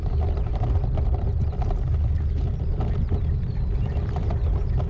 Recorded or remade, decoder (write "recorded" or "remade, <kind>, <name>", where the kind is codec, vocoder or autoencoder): recorded